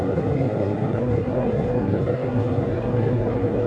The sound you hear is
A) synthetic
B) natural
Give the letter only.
A